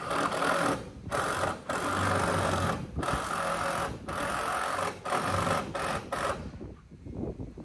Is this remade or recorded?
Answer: recorded